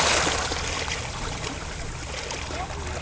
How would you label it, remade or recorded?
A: recorded